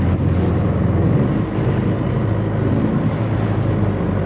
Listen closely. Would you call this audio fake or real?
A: real